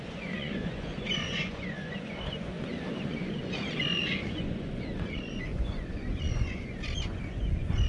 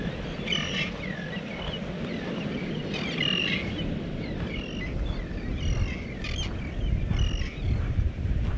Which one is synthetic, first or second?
first